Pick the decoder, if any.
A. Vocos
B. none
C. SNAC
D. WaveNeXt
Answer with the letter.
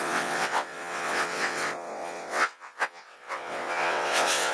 D